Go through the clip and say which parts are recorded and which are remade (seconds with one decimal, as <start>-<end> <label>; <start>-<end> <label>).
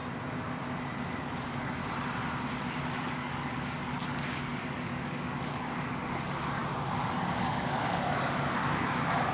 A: 0.0-1.2 recorded; 1.2-1.8 remade; 1.8-2.8 recorded; 2.8-6.6 remade; 6.6-7.2 recorded; 7.2-9.3 remade